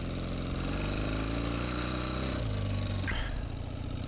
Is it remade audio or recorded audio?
recorded